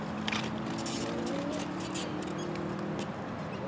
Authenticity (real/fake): real